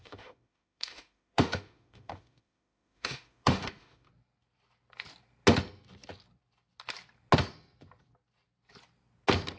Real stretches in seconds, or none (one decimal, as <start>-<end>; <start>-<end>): 4.1-9.6